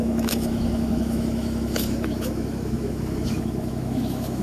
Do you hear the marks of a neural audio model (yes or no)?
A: yes